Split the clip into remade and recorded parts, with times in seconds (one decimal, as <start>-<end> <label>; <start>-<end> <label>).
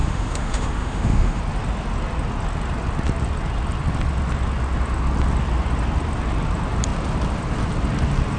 0.0-1.4 remade; 1.4-8.4 recorded